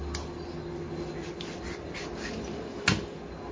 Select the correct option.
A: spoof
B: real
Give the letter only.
B